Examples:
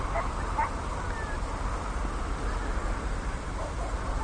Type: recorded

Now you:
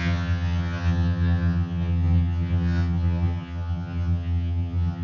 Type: remade